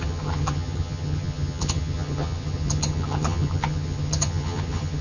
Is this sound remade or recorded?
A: remade